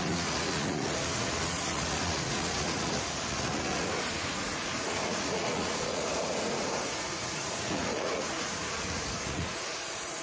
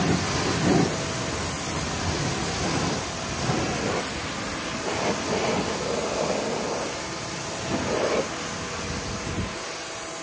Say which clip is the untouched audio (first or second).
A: second